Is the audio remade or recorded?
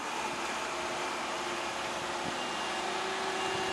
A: recorded